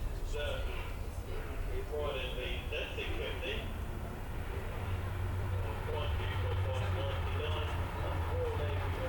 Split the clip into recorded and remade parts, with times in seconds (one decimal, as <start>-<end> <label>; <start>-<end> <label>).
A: 0.0-3.1 recorded; 3.1-7.5 remade; 7.5-9.1 recorded